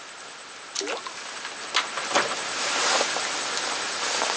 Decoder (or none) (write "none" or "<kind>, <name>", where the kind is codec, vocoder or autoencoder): none